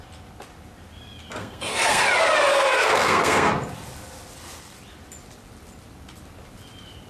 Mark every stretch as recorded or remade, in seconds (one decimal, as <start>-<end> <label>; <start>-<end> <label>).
0.0-1.4 recorded; 1.4-2.0 remade; 2.0-2.5 recorded; 2.5-3.5 remade; 3.5-7.1 recorded